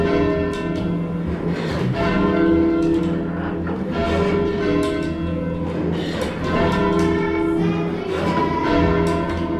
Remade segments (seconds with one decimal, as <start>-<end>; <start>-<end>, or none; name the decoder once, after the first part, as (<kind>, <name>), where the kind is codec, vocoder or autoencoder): 1.7-3.0 (codec, DAC)